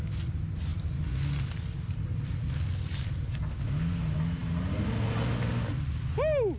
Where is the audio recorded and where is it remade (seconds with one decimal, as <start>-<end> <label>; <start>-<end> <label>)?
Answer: 0.0-6.6 recorded